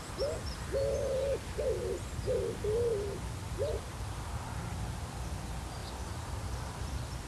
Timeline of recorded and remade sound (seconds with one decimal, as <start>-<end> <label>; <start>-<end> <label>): 0.0-7.3 remade